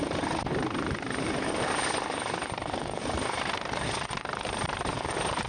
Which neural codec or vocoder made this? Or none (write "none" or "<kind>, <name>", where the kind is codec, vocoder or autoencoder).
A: vocoder, BigVGAN v2